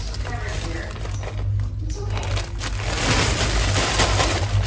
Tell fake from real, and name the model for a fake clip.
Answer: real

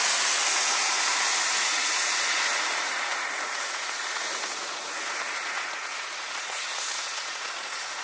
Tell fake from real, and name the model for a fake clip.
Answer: fake, vocoder, Vocos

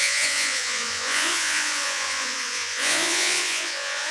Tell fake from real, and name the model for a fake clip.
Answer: fake, vocoder, Vocos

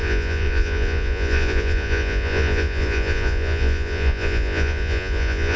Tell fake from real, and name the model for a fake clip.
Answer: fake, vocoder, Vocos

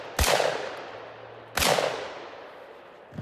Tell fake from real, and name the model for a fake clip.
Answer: real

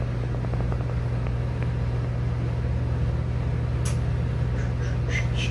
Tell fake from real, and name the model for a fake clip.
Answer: real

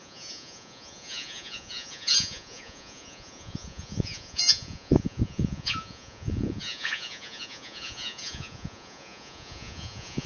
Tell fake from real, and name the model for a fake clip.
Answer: fake, vocoder, Vocos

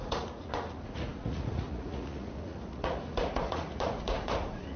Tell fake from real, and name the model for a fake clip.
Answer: fake, vocoder, Vocos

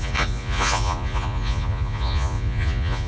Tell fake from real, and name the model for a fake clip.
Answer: fake, vocoder, Vocos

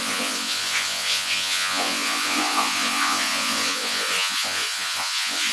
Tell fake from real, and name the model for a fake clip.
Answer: fake, vocoder, Vocos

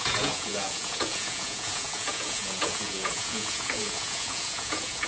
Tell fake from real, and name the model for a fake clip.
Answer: fake, vocoder, Vocos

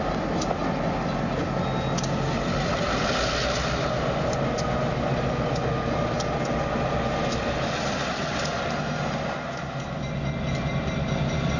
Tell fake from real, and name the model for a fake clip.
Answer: real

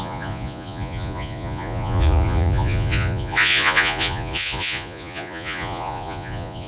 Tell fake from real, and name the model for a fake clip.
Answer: fake, vocoder, Vocos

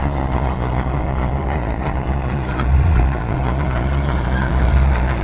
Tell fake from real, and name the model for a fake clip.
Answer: fake, vocoder, Vocos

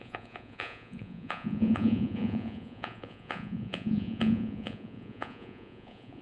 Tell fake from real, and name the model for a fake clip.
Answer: fake, vocoder, Vocos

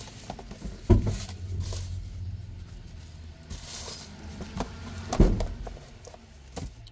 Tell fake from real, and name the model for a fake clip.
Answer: real